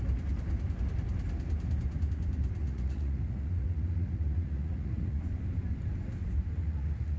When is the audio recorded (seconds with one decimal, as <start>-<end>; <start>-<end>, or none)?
0.0-2.6; 5.2-6.6